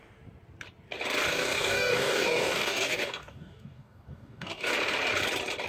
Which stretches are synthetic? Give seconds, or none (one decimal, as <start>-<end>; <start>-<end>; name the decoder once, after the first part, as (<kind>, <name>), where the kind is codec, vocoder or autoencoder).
1.3-4.7 (codec, DAC)